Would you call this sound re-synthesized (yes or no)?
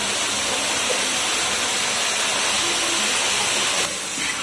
no